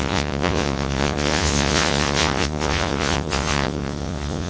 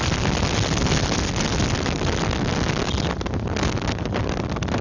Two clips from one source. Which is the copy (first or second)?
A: first